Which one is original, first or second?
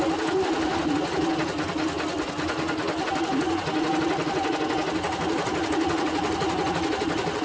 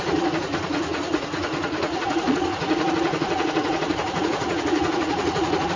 first